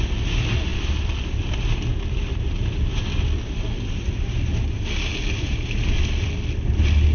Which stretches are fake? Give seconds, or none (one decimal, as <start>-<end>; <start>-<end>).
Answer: none